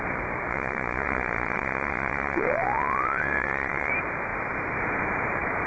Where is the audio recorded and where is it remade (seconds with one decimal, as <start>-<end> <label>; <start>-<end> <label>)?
0.0-0.5 recorded; 0.5-3.9 remade; 3.9-5.7 recorded